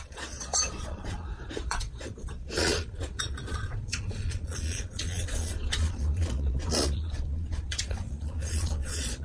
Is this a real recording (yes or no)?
no